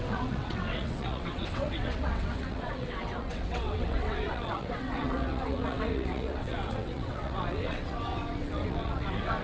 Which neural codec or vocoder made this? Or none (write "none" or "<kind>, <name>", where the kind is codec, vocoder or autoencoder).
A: vocoder, WaveNeXt